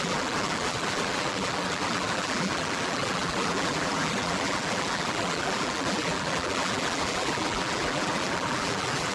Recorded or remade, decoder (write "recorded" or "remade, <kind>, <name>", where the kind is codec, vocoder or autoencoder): remade, vocoder, BigVGAN v2